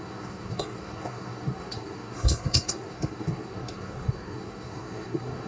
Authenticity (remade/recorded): remade